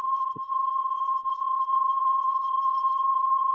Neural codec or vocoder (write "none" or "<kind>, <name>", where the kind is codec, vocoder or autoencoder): codec, HILCodec